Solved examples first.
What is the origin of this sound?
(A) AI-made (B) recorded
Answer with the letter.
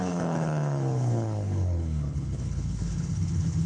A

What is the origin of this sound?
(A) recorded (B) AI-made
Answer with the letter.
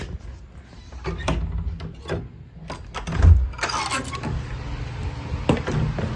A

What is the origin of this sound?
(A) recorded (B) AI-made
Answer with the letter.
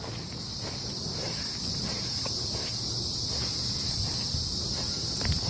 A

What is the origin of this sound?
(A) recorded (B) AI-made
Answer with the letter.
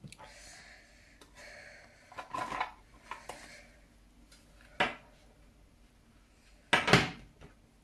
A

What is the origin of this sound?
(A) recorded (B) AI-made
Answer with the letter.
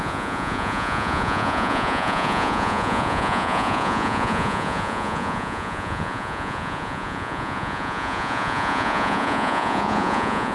B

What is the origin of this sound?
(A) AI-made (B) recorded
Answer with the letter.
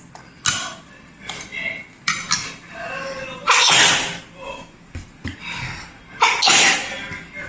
B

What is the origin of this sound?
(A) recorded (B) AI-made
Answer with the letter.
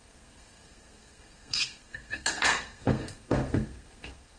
B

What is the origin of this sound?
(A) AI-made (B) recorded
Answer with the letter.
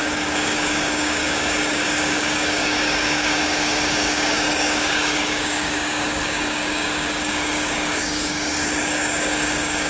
A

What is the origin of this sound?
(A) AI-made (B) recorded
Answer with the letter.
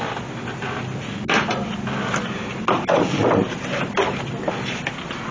B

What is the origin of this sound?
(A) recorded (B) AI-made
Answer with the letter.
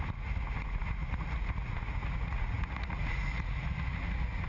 B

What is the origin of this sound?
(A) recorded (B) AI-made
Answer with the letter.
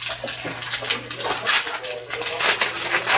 A